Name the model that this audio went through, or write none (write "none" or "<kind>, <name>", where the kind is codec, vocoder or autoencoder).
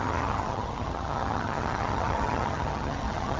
vocoder, HiFi-GAN